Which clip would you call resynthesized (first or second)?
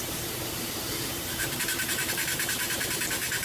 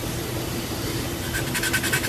first